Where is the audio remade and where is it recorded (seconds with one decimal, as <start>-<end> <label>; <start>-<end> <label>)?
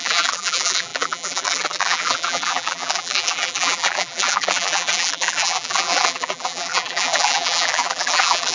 0.0-8.5 remade